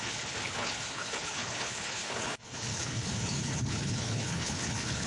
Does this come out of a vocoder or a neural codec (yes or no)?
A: yes